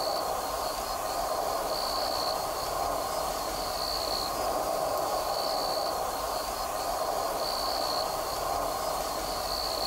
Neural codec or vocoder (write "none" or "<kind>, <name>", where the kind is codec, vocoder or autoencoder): vocoder, BigVGAN v2